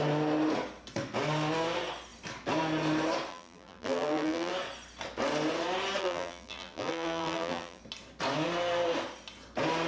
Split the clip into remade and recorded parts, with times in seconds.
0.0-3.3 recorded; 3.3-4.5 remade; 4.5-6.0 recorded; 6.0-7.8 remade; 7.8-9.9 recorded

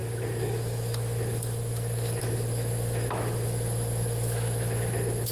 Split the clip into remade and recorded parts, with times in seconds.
0.0-5.3 remade

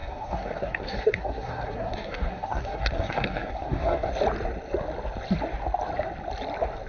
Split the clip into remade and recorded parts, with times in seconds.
0.0-4.1 remade; 4.1-6.9 recorded

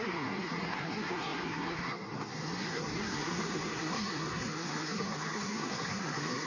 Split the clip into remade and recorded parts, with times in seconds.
0.0-6.5 remade

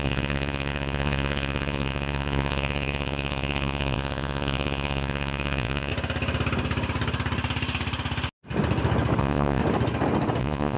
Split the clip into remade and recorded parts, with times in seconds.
0.0-5.9 remade; 5.9-9.2 recorded; 9.2-9.6 remade; 9.6-10.4 recorded; 10.4-10.8 remade

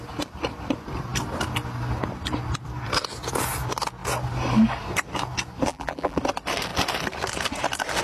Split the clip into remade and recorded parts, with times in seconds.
0.0-5.7 recorded; 5.7-6.2 remade; 6.2-8.0 recorded

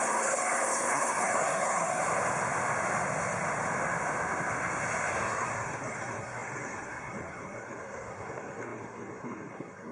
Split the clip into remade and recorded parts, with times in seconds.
0.0-2.0 remade; 2.0-5.1 recorded; 5.1-9.9 remade

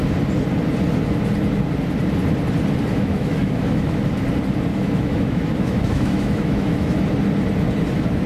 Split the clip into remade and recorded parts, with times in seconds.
0.0-2.9 recorded; 2.9-4.0 remade; 4.0-4.7 recorded; 4.7-7.0 remade; 7.0-8.3 recorded